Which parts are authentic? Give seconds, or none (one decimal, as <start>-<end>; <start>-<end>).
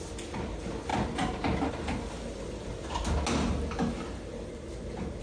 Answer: 0.0-5.2